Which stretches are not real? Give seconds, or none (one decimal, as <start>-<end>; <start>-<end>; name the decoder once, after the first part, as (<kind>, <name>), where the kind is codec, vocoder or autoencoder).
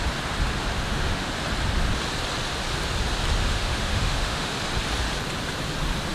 0.6-1.3 (autoencoder, DAC-VAE); 3.4-4.5